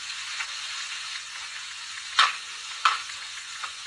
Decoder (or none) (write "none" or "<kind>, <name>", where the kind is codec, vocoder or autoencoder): vocoder, Vocos